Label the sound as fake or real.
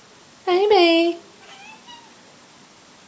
real